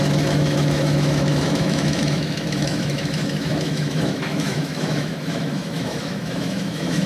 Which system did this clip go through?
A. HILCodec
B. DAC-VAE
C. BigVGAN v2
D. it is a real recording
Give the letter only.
B